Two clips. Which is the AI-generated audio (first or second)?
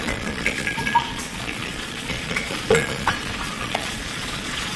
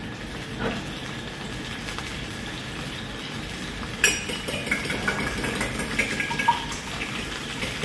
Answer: first